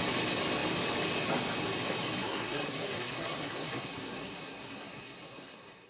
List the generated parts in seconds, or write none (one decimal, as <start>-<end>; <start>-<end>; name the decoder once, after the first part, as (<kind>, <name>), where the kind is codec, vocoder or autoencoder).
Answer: 2.2-5.9 (codec, SNAC)